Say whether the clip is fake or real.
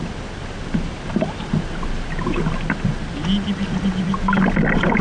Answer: real